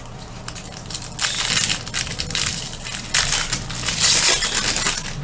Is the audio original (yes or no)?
yes